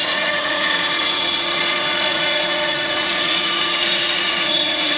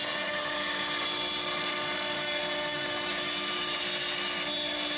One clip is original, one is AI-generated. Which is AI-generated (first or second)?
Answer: first